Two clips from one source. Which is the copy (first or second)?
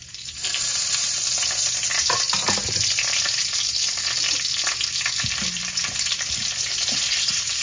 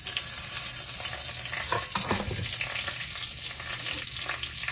first